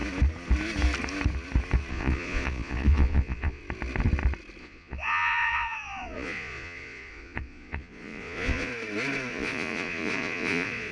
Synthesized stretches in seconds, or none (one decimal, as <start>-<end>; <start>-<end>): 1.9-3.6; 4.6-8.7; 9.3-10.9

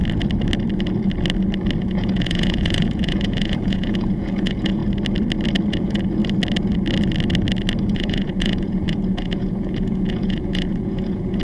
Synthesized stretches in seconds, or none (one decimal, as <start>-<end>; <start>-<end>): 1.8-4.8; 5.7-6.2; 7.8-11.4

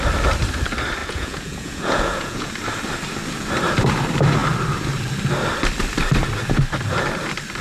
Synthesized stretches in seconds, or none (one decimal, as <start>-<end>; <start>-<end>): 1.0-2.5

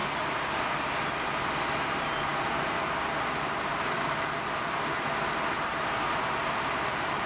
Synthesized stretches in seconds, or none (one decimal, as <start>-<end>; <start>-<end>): none

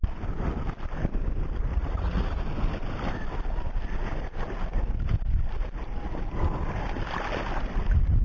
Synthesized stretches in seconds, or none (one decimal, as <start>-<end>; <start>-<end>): 1.7-2.4

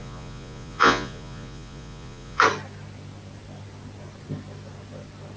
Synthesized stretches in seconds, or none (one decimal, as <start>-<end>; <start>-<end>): 0.0-2.4

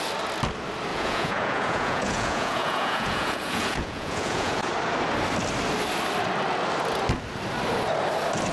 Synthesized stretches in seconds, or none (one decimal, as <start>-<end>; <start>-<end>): 0.9-4.7